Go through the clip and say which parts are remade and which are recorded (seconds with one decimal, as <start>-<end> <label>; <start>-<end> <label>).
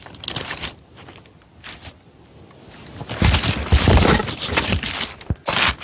0.0-5.8 recorded